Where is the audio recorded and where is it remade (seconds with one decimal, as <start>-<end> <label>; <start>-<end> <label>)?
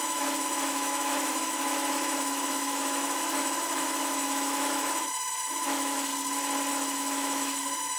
0.0-6.1 remade; 6.1-6.7 recorded; 6.7-8.0 remade